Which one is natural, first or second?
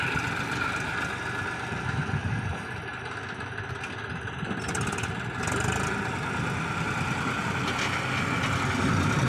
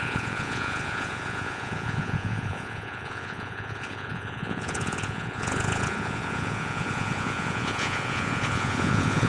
first